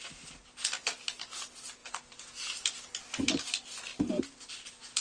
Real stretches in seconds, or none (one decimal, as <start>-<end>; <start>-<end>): 0.0-5.0